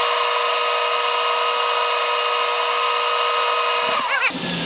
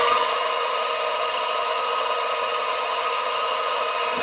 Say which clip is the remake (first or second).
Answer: second